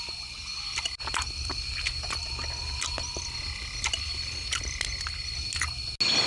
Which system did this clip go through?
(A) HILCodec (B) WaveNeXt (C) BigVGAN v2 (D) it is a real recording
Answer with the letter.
D